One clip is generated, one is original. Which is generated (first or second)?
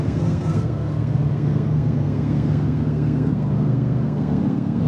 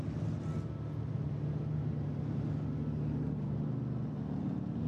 first